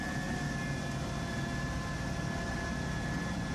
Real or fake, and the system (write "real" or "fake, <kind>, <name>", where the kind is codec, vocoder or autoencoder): real